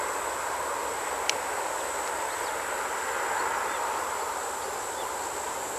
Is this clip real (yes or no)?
yes